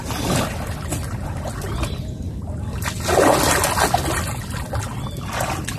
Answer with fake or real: real